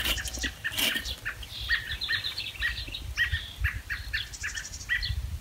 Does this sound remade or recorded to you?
recorded